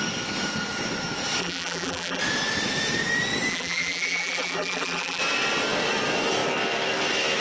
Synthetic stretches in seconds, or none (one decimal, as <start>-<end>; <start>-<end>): 1.4-2.2; 3.5-5.2